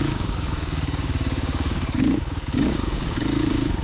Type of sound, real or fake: fake